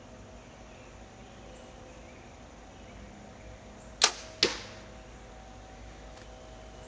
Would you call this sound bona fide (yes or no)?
yes